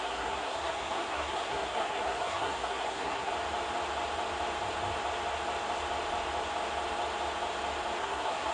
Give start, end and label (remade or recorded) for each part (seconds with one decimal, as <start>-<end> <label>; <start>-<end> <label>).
0.0-3.3 remade; 3.3-8.0 recorded; 8.0-8.5 remade